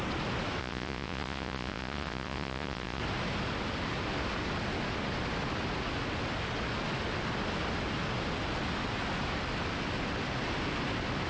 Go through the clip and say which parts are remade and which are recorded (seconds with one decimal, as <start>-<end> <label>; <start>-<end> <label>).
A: 0.0-0.6 recorded; 0.6-3.0 remade; 3.0-11.3 recorded